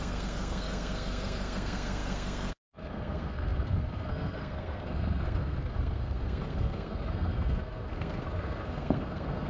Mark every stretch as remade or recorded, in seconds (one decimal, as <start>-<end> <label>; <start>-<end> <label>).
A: 0.0-9.5 remade